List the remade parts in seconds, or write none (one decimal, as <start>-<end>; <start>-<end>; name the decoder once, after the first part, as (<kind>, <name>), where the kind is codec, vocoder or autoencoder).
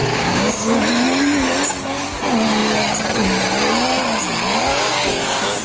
0.0-0.8 (codec, DAC); 4.7-5.6